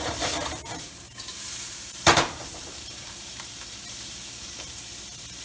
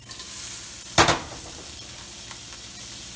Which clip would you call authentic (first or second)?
second